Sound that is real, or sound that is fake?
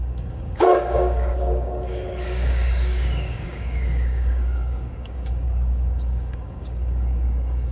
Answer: fake